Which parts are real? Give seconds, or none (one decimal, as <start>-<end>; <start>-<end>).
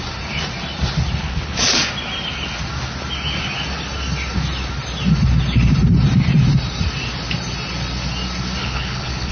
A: 0.0-1.2; 1.8-8.6